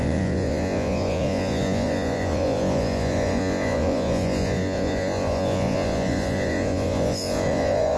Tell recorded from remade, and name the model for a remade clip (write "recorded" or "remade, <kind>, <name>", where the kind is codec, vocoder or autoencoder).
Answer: remade, vocoder, Vocos